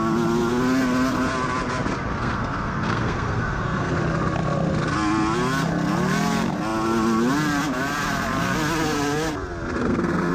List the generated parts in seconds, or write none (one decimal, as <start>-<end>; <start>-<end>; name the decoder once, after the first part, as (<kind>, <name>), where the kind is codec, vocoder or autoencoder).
2.2-3.9 (codec, SNAC); 9.8-10.3